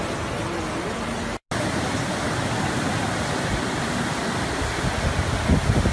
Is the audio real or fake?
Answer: real